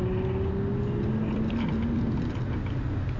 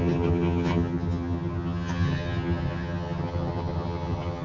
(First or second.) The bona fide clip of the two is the first